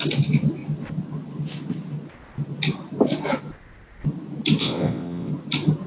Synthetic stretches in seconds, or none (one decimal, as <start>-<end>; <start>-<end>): 4.6-5.3